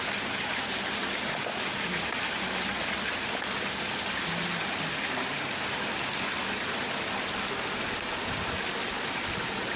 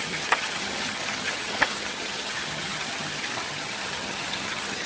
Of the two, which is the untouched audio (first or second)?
first